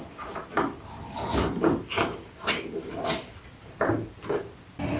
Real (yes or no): yes